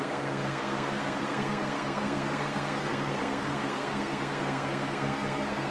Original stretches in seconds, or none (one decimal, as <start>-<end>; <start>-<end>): none